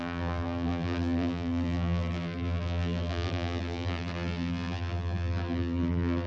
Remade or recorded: remade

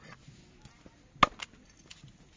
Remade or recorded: recorded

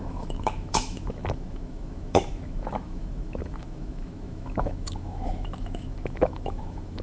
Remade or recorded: remade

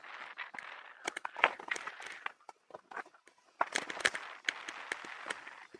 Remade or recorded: recorded